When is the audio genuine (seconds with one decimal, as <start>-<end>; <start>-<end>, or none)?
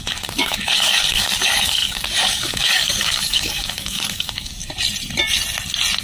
4.6-6.0